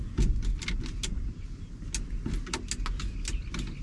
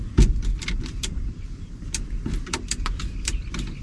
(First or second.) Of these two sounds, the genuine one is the first